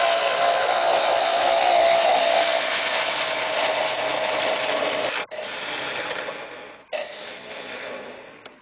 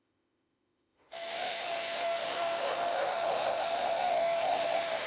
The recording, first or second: first